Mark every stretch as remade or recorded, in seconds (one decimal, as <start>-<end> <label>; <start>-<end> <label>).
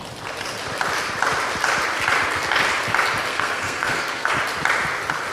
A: 0.0-3.3 recorded; 3.3-4.3 remade; 4.3-5.3 recorded